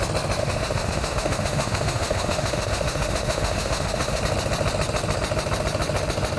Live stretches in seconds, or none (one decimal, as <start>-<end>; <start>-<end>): 0.0-0.4; 4.2-6.4